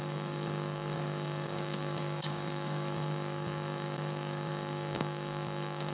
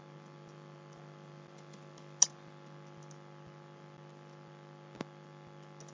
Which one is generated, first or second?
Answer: first